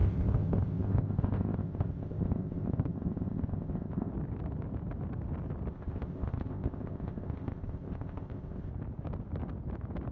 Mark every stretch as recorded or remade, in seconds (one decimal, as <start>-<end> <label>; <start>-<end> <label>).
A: 0.0-4.1 remade; 4.1-5.7 recorded; 5.7-8.7 remade; 8.7-10.1 recorded